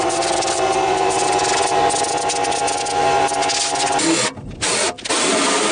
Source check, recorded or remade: recorded